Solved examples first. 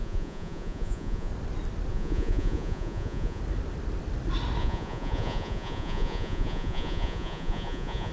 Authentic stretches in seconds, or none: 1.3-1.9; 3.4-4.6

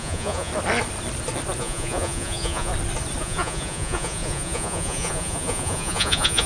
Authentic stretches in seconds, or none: 0.5-1.6; 2.7-3.2